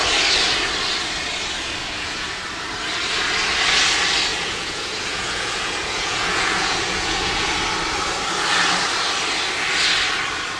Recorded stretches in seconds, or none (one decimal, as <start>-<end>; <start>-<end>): 0.0-1.8; 2.4-4.3; 7.6-10.6